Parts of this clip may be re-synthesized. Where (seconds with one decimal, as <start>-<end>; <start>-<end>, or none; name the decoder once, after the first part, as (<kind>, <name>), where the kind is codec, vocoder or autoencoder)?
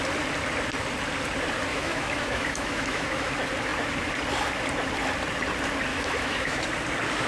1.7-3.3 (autoencoder, DAC-VAE); 5.9-6.6